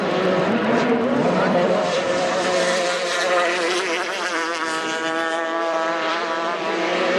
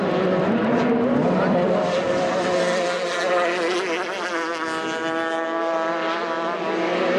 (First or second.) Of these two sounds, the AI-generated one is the first